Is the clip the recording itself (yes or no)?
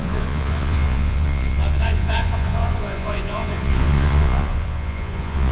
no